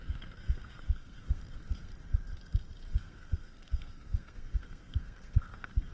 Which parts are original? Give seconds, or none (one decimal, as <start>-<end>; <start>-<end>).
1.9-3.0